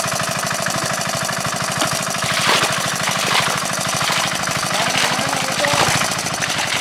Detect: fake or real real